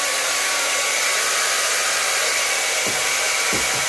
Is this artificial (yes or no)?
no